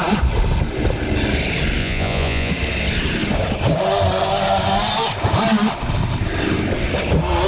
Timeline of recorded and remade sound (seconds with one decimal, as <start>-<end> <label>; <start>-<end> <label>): 0.0-1.8 recorded; 1.8-2.5 remade; 2.5-7.5 recorded